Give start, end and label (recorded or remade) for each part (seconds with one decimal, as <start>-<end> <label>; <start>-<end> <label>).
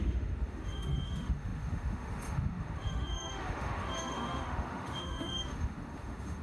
0.0-6.4 remade